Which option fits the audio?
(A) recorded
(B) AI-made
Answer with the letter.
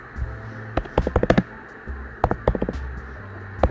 A